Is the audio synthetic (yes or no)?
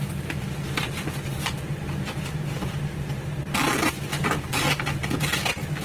no